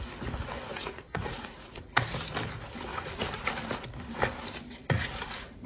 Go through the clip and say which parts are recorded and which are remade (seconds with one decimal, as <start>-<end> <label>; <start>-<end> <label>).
0.0-0.7 recorded; 0.7-1.8 remade; 1.8-2.9 recorded; 2.9-3.5 remade; 3.5-4.8 recorded; 4.8-5.7 remade